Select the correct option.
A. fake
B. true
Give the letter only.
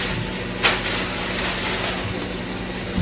B